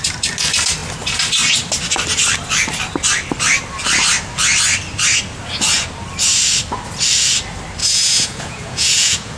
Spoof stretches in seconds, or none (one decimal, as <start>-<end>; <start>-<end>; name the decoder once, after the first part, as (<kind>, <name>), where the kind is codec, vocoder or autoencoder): 7.8-9.4 (vocoder, Vocos)